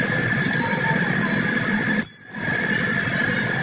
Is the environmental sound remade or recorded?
recorded